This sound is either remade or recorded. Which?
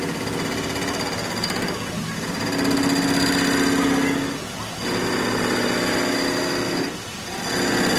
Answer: recorded